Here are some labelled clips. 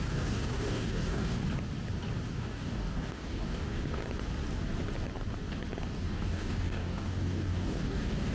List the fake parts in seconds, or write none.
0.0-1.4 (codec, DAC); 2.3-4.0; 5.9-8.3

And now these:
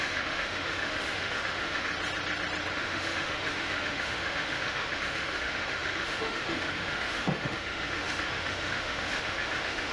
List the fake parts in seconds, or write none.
0.0-1.9 (autoencoder, DAC-VAE); 2.7-9.9

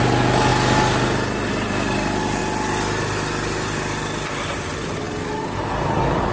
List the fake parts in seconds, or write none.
none